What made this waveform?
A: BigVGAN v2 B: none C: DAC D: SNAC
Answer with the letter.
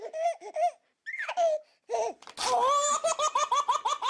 B